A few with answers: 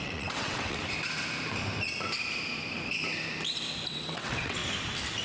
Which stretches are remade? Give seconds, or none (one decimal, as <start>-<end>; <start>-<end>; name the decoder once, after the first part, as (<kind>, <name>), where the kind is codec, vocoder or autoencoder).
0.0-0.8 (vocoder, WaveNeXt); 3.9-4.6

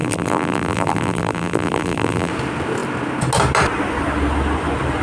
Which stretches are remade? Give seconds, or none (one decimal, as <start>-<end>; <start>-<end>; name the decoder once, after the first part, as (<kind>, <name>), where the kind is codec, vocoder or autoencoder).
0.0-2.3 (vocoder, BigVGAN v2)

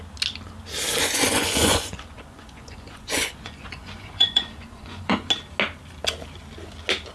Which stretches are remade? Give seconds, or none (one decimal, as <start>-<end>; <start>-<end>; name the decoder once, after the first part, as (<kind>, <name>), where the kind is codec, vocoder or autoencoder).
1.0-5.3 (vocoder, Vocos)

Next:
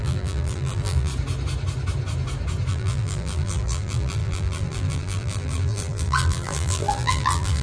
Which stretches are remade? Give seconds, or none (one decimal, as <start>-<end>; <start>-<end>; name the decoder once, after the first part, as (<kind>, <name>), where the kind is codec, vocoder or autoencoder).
0.0-1.1 (vocoder, BigVGAN v2); 2.7-7.6

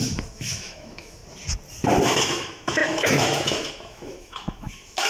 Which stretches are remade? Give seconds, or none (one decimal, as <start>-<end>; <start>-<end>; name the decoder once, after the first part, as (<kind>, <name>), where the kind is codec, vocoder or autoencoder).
0.0-1.2 (autoencoder, DAC-VAE); 2.0-5.1

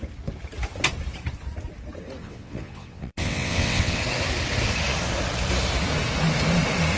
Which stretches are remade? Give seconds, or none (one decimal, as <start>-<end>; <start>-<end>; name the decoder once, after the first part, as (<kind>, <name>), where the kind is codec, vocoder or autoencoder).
2.2-4.0 (vocoder, WaveNeXt)

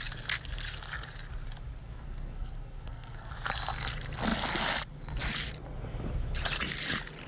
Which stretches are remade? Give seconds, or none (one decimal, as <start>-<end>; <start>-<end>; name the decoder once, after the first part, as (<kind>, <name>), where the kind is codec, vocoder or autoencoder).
1.8-3.3 (codec, SNAC)